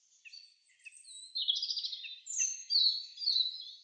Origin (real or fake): real